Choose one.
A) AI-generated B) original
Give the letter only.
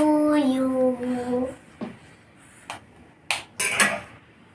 B